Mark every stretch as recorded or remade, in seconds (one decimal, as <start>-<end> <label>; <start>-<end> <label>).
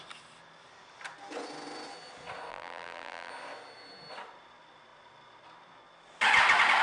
0.0-2.5 recorded; 2.5-3.3 remade; 3.3-6.8 recorded